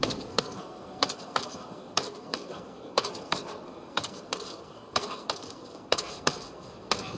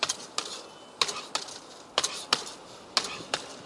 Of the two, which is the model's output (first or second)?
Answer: first